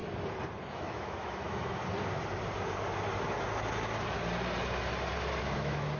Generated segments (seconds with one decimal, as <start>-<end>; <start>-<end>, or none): 0.6-1.8; 5.4-6.0